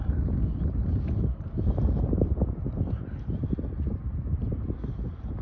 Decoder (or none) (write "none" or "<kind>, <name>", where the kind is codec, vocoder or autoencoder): none